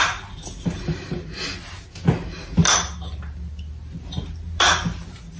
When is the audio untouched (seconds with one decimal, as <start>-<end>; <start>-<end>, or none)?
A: 0.0-5.4